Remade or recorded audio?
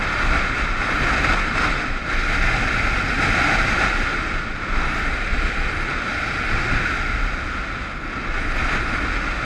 recorded